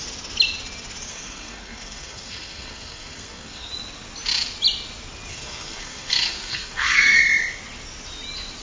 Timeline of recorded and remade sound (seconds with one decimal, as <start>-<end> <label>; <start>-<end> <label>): 0.0-1.1 recorded; 1.1-3.7 remade; 3.7-5.3 recorded; 5.3-7.2 remade; 7.2-8.6 recorded